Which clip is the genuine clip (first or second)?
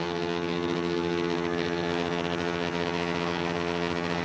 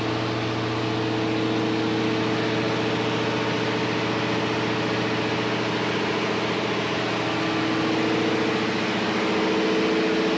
second